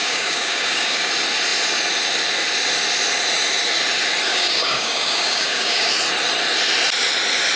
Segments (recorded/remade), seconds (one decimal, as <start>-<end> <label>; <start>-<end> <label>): 0.0-1.1 remade; 1.1-4.3 recorded; 4.3-5.9 remade; 5.9-7.6 recorded